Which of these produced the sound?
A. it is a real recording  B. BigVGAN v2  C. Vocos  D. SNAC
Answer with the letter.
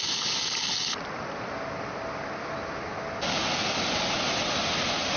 A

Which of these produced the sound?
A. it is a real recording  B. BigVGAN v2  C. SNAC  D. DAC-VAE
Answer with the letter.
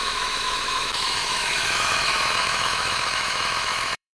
D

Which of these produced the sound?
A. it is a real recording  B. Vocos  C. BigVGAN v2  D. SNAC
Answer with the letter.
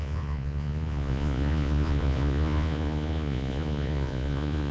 B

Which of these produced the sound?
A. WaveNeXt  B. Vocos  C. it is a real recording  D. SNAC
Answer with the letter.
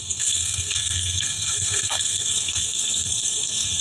D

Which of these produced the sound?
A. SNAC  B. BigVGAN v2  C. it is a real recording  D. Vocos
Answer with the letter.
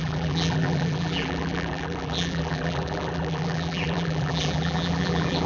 B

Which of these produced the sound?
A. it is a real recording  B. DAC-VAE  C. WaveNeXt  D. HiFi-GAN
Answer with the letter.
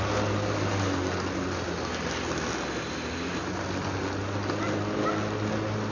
A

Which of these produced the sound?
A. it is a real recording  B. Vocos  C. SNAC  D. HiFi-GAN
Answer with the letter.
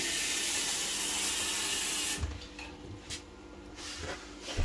A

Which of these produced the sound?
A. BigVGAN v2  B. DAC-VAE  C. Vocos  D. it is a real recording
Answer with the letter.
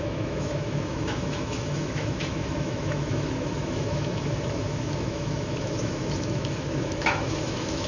B